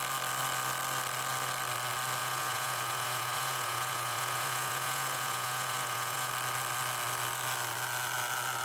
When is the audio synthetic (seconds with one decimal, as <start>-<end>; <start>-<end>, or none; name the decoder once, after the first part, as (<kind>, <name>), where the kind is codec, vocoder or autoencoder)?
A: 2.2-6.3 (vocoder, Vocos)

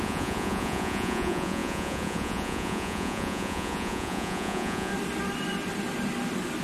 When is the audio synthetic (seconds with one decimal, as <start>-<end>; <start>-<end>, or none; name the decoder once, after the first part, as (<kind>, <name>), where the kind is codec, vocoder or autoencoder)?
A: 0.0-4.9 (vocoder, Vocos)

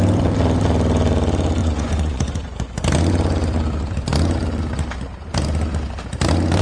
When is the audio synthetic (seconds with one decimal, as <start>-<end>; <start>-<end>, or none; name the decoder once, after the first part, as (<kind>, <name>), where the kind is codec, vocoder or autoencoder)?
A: 1.6-2.8 (vocoder, Vocos)

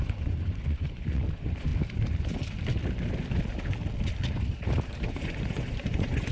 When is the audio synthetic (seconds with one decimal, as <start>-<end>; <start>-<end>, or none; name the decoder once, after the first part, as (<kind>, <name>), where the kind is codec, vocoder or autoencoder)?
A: 0.0-1.7 (vocoder, Vocos); 5.1-6.3

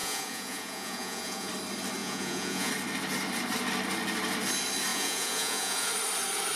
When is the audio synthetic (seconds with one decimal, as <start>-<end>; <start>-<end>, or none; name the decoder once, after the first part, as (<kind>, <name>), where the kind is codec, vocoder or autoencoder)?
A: 0.0-1.5 (vocoder, Vocos); 2.0-2.7; 4.9-5.9